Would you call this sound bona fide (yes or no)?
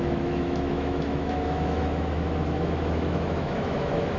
no